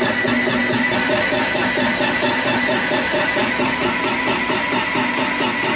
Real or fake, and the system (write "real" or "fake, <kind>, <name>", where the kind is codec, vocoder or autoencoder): real